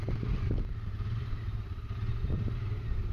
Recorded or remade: recorded